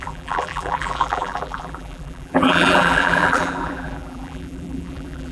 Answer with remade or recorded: remade